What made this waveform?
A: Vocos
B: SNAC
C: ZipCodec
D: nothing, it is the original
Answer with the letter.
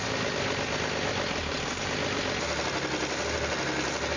D